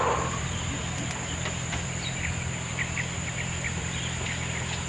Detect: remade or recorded recorded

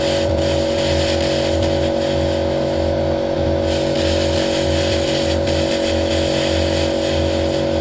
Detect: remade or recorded recorded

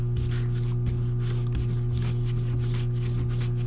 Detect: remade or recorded recorded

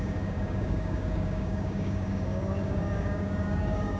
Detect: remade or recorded remade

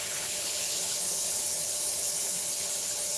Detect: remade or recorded remade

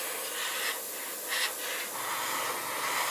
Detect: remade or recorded recorded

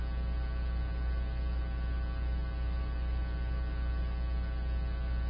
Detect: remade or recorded recorded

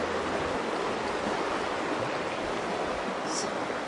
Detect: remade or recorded recorded